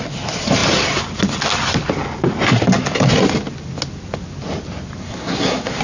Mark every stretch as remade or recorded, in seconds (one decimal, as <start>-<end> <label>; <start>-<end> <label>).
0.0-5.0 recorded; 5.0-5.8 remade